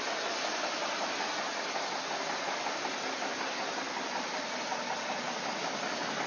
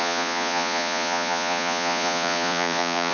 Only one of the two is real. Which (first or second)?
first